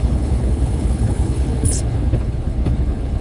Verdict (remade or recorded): remade